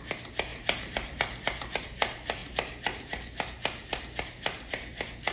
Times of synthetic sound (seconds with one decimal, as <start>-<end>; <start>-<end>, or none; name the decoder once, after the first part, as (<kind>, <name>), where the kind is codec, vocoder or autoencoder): 0.5-1.2 (vocoder, BigVGAN v2)